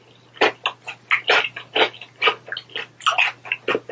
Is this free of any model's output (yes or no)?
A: yes